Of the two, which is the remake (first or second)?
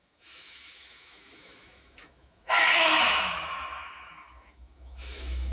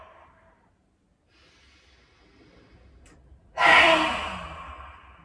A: first